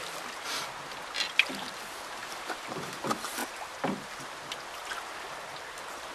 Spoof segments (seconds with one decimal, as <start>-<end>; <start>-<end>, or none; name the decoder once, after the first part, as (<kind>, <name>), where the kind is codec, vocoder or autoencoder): 2.2-2.9 (vocoder, BigVGAN v2); 3.4-4.1